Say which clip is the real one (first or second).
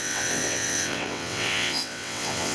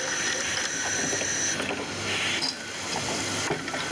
second